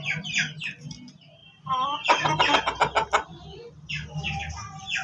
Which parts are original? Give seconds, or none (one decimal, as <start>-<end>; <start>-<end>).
0.0-5.0